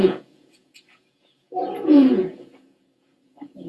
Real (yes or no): no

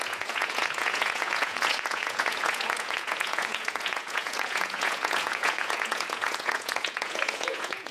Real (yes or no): no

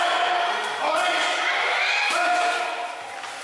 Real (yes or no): yes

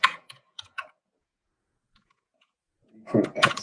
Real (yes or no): no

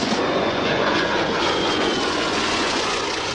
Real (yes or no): no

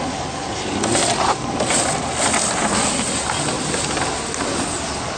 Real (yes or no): yes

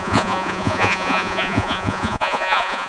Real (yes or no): no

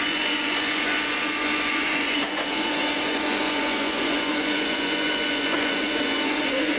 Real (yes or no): no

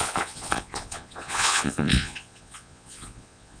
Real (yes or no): no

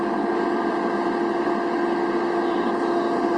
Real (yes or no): yes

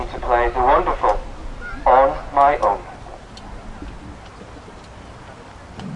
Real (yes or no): yes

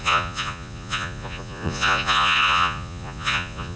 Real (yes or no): no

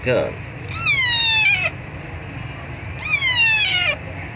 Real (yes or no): yes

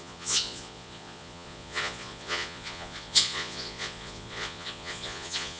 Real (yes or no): no